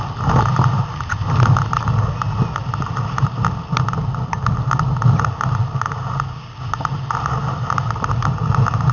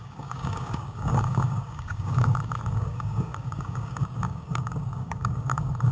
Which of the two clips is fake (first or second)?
second